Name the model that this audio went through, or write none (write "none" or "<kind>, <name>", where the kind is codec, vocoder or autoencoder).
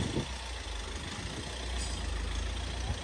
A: none